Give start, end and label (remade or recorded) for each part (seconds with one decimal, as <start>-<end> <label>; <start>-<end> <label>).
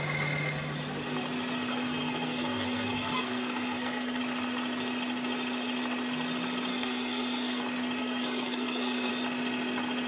0.0-1.7 recorded; 1.7-4.2 remade; 4.2-6.7 recorded; 6.7-7.6 remade; 7.6-8.0 recorded; 8.0-9.1 remade; 9.1-10.1 recorded